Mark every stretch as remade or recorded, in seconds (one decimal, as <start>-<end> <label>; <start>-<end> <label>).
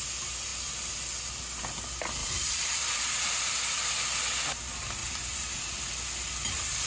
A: 0.0-2.2 recorded; 2.2-3.5 remade; 3.5-5.0 recorded; 5.0-5.6 remade; 5.6-6.9 recorded